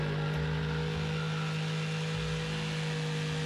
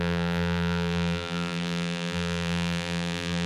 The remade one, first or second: second